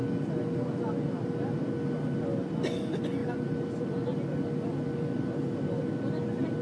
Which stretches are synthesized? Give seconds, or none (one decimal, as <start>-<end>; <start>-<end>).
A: none